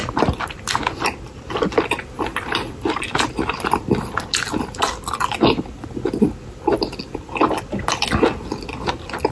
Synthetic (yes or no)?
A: no